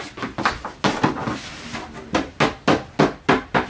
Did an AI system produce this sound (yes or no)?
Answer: no